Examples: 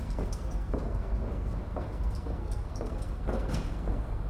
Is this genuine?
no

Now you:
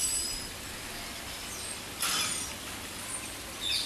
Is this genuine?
yes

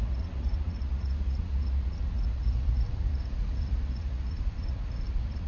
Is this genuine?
no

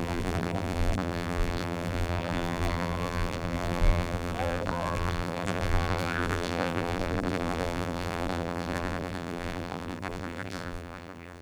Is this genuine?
no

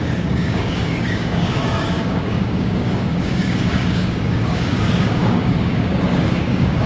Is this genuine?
no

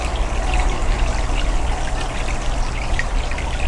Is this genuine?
yes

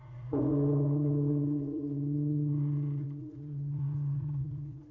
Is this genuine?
no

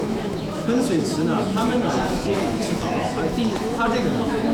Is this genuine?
no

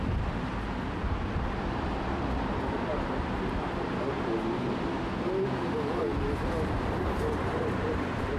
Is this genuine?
no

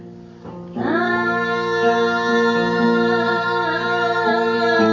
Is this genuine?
yes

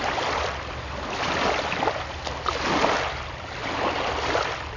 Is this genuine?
yes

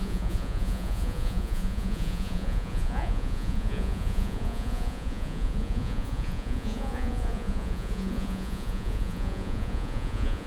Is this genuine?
no